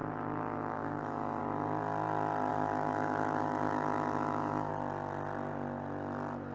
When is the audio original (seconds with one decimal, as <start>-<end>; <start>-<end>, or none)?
1.4-2.5; 4.7-6.5